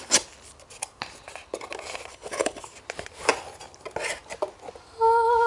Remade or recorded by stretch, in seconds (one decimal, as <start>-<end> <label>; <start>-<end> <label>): 0.0-2.1 recorded; 2.1-2.6 remade; 2.6-5.5 recorded